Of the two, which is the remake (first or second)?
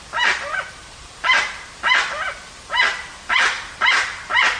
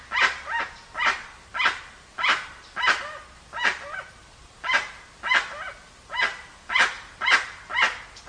first